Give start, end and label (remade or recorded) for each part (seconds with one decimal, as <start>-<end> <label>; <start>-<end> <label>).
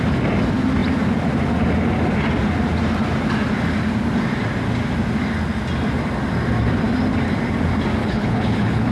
0.0-8.0 recorded; 8.0-8.9 remade